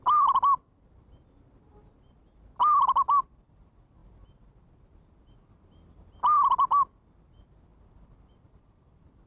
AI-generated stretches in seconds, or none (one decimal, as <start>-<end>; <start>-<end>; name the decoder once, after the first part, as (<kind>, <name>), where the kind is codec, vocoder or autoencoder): none